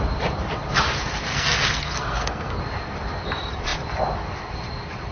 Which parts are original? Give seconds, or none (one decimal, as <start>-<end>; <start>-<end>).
0.0-1.3; 2.6-5.1